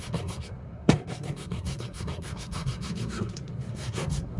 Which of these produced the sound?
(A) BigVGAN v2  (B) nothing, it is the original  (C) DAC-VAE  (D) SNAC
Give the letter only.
D